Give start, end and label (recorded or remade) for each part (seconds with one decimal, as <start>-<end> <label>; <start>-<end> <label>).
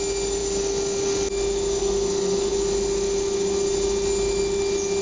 0.0-1.8 recorded; 1.8-2.5 remade; 2.5-5.0 recorded